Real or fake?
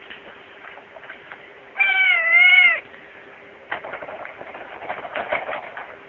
real